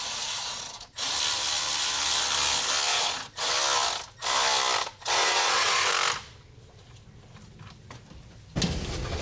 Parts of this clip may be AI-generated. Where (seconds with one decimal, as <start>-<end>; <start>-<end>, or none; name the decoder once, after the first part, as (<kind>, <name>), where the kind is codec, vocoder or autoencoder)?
0.0-1.1 (vocoder, Vocos); 2.9-3.5; 5.0-5.9